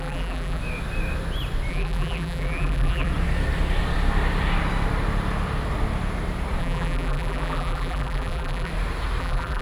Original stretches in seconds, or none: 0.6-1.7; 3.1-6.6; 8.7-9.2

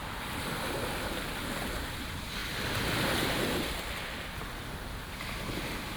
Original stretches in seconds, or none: 0.9-6.0

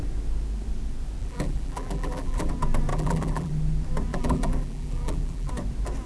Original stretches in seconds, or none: 0.0-1.2; 2.5-2.9; 3.5-4.1; 5.5-6.1